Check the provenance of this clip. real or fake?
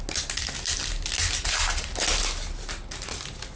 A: real